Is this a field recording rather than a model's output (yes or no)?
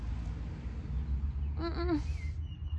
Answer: yes